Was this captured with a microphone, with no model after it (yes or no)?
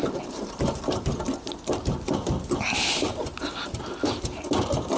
yes